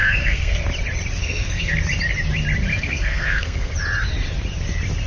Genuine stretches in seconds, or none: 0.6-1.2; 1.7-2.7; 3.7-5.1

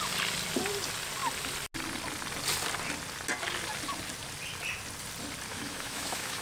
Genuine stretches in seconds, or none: 0.0-5.5

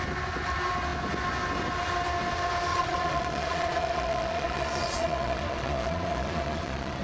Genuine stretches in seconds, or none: 0.0-2.7